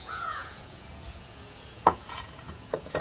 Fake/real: fake